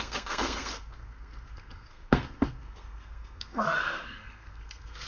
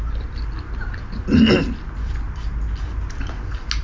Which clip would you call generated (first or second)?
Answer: first